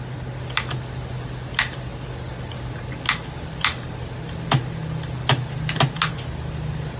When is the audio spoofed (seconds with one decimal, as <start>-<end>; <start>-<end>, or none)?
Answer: none